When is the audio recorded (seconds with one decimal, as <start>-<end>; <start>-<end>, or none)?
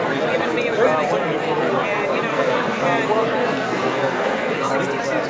0.0-2.3; 2.8-3.4; 4.7-5.3